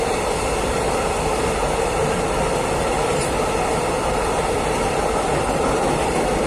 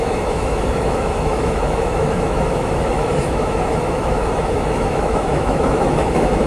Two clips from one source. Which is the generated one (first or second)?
second